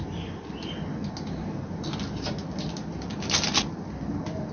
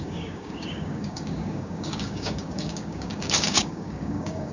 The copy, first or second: second